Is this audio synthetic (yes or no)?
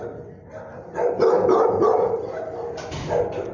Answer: no